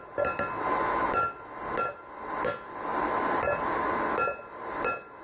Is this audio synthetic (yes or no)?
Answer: no